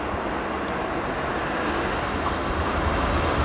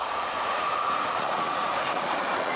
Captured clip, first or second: first